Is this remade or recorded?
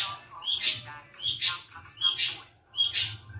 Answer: recorded